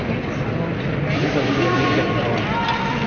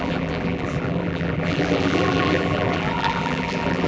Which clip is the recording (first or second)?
first